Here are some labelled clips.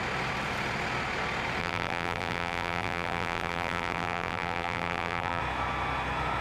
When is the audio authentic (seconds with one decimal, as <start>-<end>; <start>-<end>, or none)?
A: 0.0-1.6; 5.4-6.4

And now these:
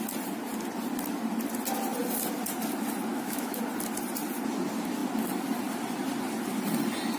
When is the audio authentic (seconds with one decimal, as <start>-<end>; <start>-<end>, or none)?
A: 0.0-3.1; 3.6-7.2

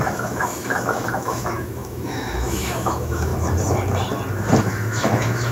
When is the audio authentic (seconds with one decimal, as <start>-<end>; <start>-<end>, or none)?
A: 3.3-4.6

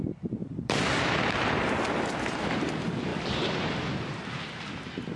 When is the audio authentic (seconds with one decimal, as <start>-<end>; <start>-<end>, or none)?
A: 0.0-0.4; 1.1-5.2

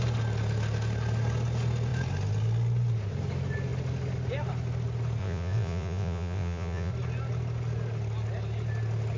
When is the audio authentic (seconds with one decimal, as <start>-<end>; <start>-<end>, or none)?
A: 0.0-5.2; 6.9-9.2

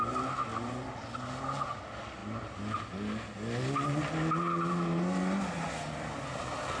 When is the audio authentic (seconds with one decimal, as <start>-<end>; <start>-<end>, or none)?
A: 0.0-6.8